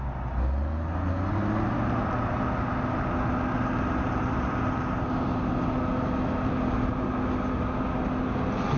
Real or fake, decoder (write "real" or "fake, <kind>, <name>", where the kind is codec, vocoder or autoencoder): real